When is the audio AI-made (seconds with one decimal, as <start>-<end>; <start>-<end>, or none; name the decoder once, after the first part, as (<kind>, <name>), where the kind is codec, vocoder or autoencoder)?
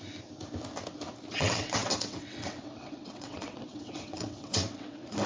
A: 1.3-5.3 (vocoder, WaveNeXt)